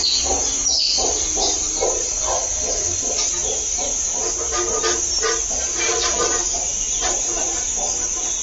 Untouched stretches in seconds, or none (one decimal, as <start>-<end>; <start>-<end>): 0.0-8.4